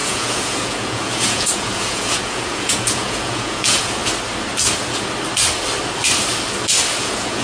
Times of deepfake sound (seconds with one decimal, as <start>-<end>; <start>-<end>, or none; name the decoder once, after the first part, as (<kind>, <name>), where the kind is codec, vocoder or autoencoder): 0.0-4.0 (vocoder, Vocos); 7.0-7.4